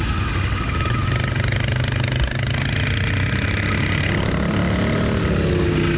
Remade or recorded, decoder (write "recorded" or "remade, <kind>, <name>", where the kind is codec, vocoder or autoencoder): recorded